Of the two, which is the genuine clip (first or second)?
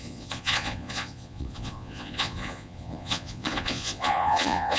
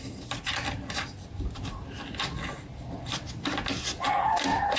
second